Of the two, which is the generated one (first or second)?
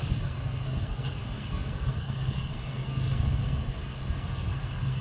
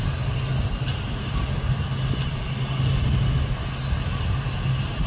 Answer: first